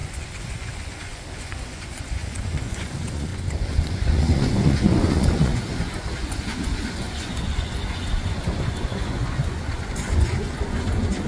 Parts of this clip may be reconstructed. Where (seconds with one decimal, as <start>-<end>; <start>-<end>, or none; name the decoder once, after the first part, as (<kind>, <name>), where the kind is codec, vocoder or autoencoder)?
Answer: 0.0-11.3 (vocoder, Vocos)